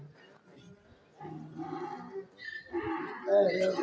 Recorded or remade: recorded